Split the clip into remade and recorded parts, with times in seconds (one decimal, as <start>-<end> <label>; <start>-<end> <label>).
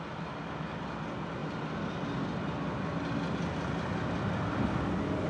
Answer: 0.0-5.3 recorded